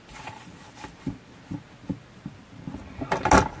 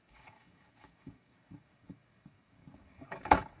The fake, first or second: second